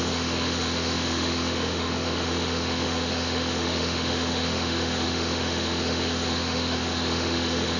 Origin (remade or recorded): remade